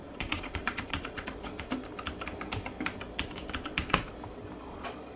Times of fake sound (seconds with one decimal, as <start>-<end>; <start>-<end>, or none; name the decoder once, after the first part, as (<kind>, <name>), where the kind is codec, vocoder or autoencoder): 0.0-1.5 (vocoder, Vocos); 4.6-5.2